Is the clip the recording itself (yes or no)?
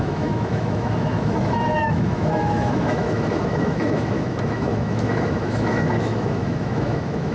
no